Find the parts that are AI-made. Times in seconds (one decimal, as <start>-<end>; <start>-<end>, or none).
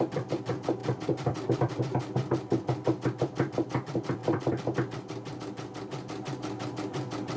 0.0-7.4